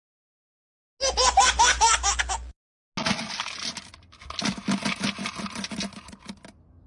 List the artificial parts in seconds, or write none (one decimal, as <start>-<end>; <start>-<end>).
none